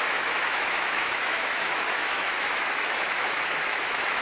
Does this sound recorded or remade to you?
remade